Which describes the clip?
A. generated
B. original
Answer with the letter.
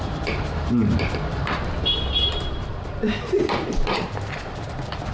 A